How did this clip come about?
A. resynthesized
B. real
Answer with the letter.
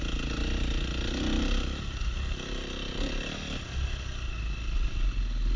B